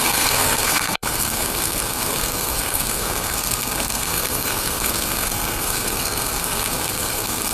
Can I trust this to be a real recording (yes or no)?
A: no